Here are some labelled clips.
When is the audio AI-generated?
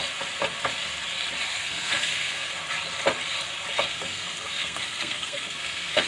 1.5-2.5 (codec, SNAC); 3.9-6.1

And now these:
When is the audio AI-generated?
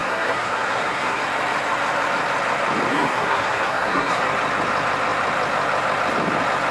0.0-1.2 (codec, SNAC); 2.9-4.2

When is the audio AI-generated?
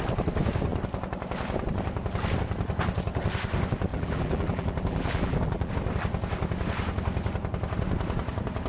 3.9-5.7 (vocoder, BigVGAN v2)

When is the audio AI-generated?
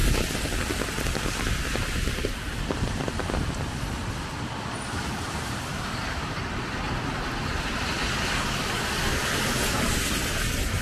5.7-6.5 (vocoder, BigVGAN v2)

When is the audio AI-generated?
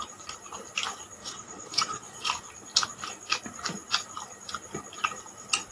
1.2-2.3 (vocoder, Vocos)